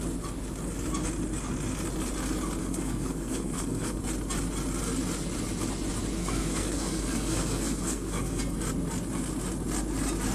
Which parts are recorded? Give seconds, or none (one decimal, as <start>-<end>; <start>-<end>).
0.0-2.6; 4.0-6.2; 8.4-10.3